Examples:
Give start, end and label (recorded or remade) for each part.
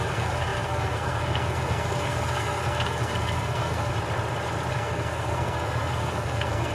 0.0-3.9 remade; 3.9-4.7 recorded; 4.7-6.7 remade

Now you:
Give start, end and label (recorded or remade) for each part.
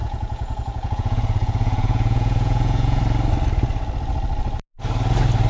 0.0-3.0 remade; 3.0-5.5 recorded